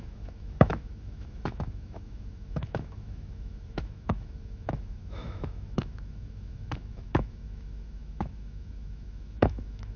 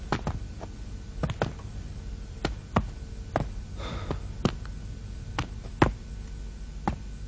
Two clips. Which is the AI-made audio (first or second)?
first